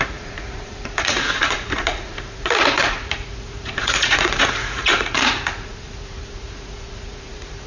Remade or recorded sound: remade